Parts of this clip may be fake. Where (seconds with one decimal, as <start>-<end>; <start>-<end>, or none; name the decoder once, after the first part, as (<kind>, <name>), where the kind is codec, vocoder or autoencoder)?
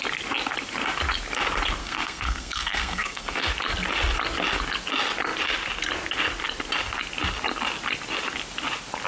1.8-3.5 (codec, SNAC)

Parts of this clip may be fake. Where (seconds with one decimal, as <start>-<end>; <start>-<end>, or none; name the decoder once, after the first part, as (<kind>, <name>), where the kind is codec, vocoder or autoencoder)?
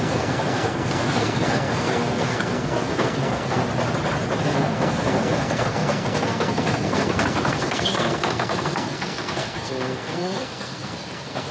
0.0-3.6 (codec, SNAC); 4.4-11.5